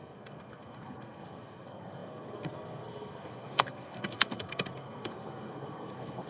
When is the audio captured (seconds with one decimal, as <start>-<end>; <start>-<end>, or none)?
none